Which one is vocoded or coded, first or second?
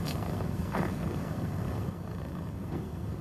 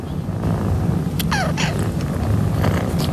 first